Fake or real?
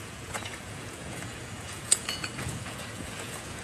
fake